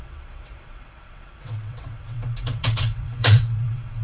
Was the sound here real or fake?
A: fake